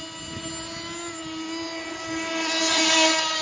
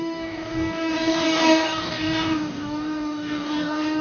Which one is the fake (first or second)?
second